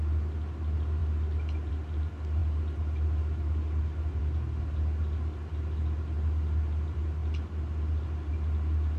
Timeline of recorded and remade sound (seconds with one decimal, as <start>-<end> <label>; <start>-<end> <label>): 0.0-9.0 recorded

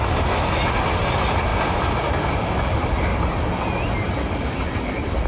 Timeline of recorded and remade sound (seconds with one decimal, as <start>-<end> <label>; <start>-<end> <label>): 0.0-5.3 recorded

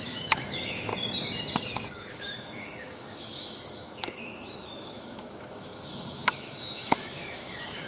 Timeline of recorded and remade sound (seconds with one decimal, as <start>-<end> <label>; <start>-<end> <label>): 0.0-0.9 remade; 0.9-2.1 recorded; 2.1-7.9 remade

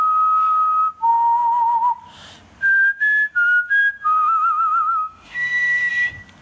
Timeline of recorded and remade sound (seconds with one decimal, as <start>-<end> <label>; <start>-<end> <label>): 0.0-4.9 recorded; 4.9-5.9 remade; 5.9-6.4 recorded